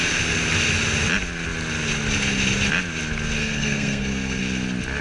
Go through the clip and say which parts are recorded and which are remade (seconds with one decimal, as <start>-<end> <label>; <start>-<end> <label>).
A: 0.0-3.4 recorded; 3.4-4.4 remade; 4.4-5.0 recorded